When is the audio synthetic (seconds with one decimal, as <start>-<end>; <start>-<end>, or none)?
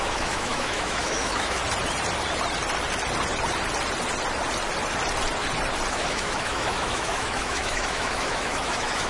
0.0-1.6; 5.9-9.1